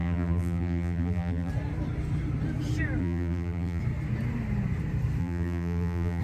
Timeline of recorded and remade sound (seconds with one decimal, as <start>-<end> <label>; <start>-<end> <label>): 0.0-1.5 remade; 1.5-3.0 recorded; 3.0-3.8 remade; 3.8-5.2 recorded; 5.2-6.2 remade